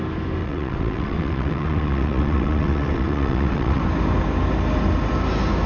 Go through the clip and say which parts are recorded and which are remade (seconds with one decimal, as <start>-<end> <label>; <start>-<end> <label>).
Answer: 0.0-0.4 recorded; 0.4-3.8 remade; 3.8-5.7 recorded

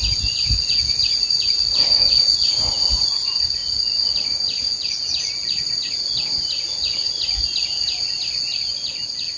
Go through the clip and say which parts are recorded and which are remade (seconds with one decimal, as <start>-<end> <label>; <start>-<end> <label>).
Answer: 0.0-9.4 recorded

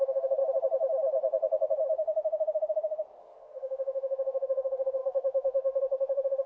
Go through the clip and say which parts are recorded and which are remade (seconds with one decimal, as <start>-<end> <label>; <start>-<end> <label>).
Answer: 0.0-0.4 remade; 0.4-3.2 recorded; 3.2-6.5 remade

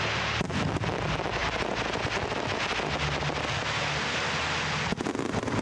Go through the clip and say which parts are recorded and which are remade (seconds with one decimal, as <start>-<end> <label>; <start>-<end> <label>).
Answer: 0.0-5.6 recorded

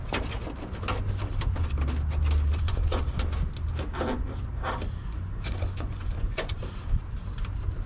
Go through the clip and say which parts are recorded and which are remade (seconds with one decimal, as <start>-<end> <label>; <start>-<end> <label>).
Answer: 0.0-2.5 recorded; 2.5-3.0 remade; 3.0-5.0 recorded; 5.0-6.6 remade; 6.6-7.9 recorded

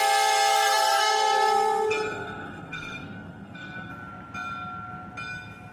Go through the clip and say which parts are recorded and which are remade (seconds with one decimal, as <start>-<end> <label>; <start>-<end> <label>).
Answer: 0.0-0.5 recorded; 0.5-3.9 remade; 3.9-5.7 recorded

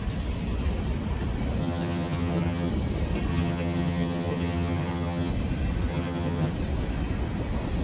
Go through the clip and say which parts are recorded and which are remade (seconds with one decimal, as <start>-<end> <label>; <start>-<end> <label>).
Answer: 0.0-1.6 recorded; 1.6-2.7 remade; 2.7-3.3 recorded; 3.3-5.3 remade; 5.3-5.9 recorded; 5.9-6.5 remade; 6.5-7.8 recorded

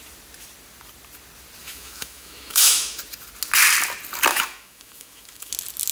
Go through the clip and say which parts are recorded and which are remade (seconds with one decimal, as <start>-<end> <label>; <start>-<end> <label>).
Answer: 0.0-1.6 recorded; 1.6-3.0 remade; 3.0-4.3 recorded; 4.3-5.5 remade; 5.5-5.9 recorded